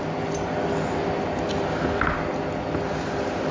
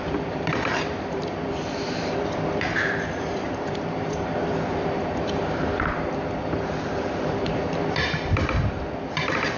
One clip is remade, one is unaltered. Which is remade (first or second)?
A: second